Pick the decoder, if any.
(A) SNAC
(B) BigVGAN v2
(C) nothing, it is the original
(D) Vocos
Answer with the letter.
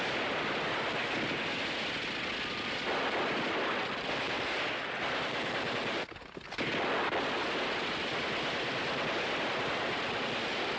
C